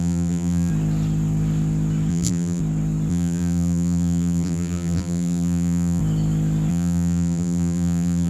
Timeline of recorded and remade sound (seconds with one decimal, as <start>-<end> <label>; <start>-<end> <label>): 0.0-0.7 remade; 0.7-2.1 recorded; 2.1-2.6 remade; 2.6-3.1 recorded; 3.1-6.0 remade; 6.0-6.7 recorded; 6.7-8.3 remade

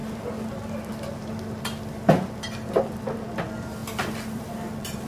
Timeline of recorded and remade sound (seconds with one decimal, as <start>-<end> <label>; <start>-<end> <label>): 0.0-5.1 remade

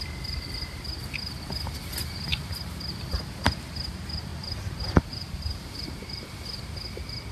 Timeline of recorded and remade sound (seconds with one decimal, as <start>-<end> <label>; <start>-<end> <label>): 0.0-2.3 recorded; 2.3-3.2 remade; 3.2-4.3 recorded; 4.3-6.6 remade; 6.6-7.3 recorded